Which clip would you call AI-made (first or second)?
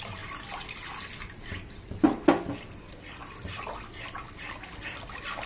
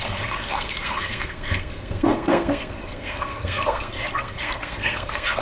second